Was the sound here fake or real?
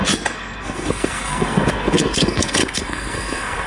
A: fake